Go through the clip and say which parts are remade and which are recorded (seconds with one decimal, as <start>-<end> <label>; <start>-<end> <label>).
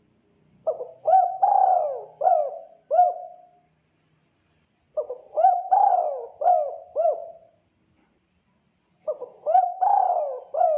0.0-10.8 recorded